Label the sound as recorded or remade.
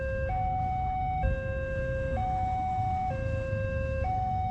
remade